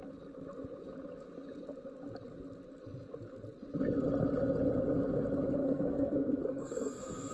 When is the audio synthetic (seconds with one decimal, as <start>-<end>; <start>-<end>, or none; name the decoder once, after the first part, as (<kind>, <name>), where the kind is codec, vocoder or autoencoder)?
5.6-7.3 (codec, SNAC)